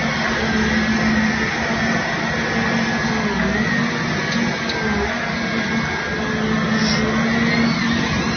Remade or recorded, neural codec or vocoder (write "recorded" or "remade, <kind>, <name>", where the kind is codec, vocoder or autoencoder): recorded